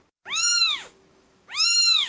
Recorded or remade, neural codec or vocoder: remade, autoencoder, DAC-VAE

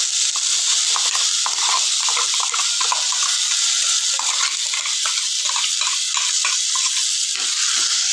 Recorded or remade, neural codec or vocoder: recorded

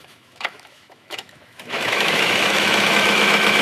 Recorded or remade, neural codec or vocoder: remade, autoencoder, DAC-VAE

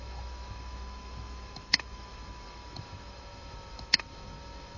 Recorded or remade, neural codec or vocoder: remade, autoencoder, DAC-VAE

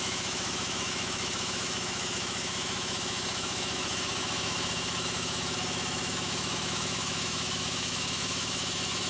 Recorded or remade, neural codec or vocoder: remade, autoencoder, DAC-VAE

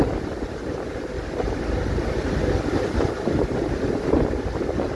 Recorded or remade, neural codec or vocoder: recorded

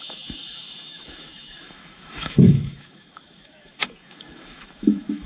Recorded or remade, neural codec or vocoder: remade, autoencoder, DAC-VAE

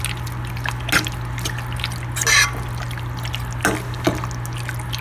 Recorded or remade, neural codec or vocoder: recorded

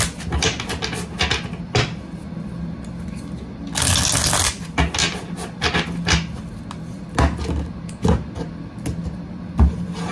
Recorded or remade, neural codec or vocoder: recorded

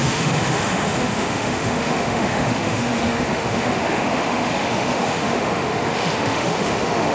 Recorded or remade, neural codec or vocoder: remade, autoencoder, DAC-VAE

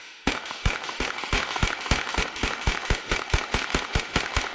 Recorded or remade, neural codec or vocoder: remade, autoencoder, DAC-VAE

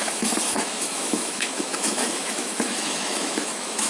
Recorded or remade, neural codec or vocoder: remade, autoencoder, DAC-VAE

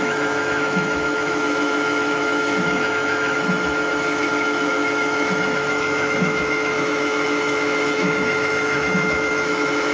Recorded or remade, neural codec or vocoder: remade, autoencoder, DAC-VAE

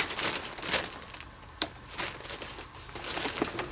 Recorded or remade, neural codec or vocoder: recorded